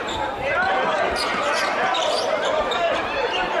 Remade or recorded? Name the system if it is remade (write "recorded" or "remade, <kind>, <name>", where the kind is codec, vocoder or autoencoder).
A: remade, vocoder, BigVGAN v2